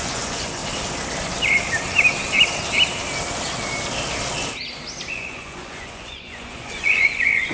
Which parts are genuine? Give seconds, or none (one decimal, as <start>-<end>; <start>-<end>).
0.6-5.1